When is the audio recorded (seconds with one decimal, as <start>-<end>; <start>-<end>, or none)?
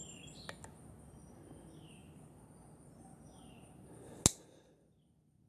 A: 0.0-5.5